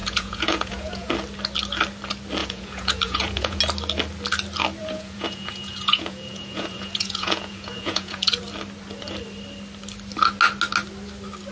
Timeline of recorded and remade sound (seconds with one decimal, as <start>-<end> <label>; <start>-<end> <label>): 0.0-1.1 remade; 1.1-2.4 recorded; 2.4-3.6 remade; 3.6-4.8 recorded; 4.8-8.4 remade; 8.4-11.5 recorded